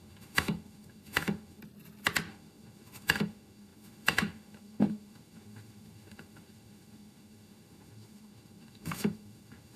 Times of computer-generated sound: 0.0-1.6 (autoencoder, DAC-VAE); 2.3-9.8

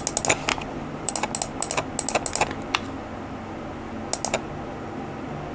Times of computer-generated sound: 0.5-1.1 (vocoder, BigVGAN v2)